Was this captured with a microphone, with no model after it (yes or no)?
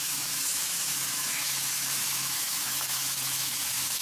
no